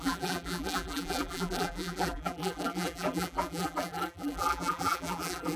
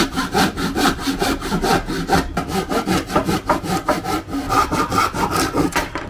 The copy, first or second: first